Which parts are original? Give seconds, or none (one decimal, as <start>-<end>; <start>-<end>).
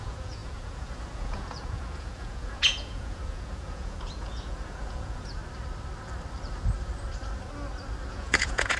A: 5.4-8.1